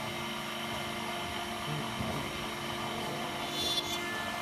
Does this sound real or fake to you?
real